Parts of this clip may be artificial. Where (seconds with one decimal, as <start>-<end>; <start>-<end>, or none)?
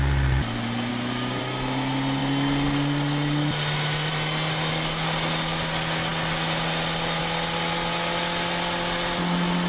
0.9-1.4